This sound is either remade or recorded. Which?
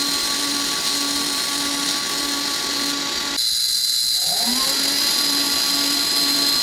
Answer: recorded